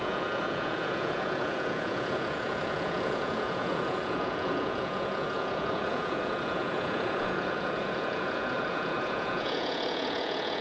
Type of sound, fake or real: fake